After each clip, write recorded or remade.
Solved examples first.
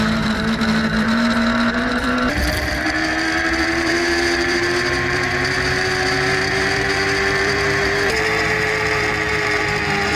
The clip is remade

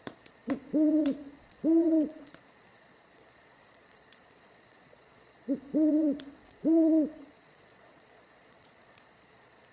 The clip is remade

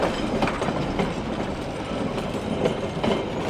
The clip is recorded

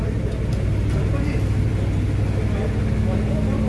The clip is recorded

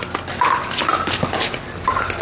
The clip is recorded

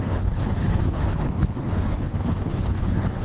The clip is remade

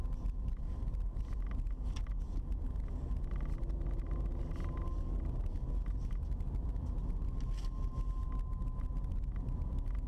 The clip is recorded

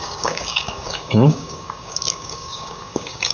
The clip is remade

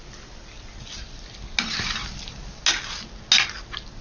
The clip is recorded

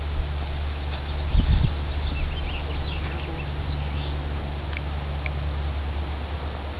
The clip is recorded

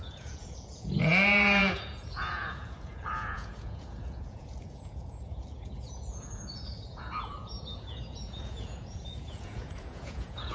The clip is remade